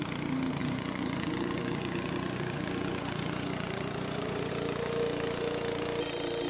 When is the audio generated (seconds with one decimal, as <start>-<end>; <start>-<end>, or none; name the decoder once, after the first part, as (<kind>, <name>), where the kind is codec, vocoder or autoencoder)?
0.6-4.5 (vocoder, Vocos)